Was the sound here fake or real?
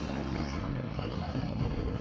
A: fake